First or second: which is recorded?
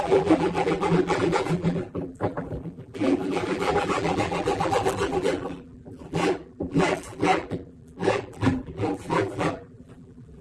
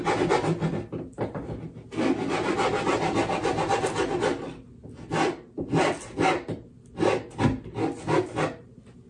second